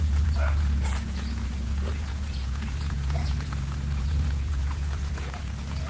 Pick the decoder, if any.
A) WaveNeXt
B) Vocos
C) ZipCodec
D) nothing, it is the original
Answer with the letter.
B